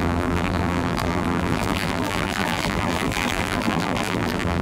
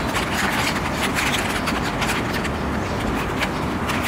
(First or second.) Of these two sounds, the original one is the second